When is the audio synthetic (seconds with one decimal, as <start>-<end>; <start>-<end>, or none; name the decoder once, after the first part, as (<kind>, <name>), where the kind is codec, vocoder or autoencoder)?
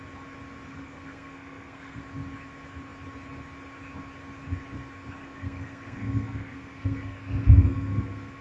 0.7-2.0 (codec, SNAC); 5.2-8.4